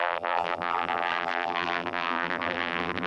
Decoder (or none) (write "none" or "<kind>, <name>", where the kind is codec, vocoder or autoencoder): vocoder, BigVGAN v2